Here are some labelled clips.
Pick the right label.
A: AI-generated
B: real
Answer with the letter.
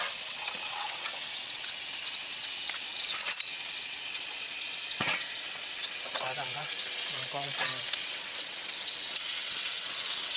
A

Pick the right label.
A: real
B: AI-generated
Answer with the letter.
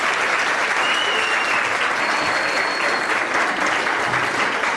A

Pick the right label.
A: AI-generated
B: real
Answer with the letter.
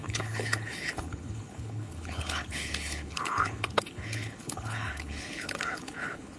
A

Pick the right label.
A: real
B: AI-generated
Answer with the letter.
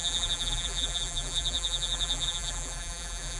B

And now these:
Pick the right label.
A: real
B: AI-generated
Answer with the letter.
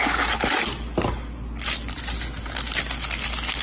A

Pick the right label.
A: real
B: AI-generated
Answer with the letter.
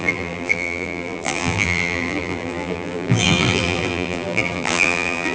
B